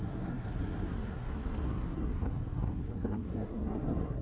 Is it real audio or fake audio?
fake